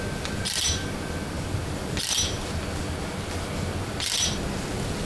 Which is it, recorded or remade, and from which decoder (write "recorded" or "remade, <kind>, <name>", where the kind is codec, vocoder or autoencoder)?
recorded